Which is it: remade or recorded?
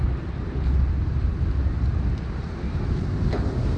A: recorded